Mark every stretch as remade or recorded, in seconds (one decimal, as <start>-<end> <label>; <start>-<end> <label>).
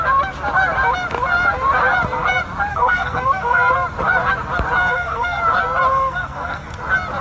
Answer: 0.0-2.7 recorded; 2.7-3.7 remade; 3.7-4.8 recorded; 4.8-5.4 remade; 5.4-5.9 recorded; 5.9-6.8 remade; 6.8-7.2 recorded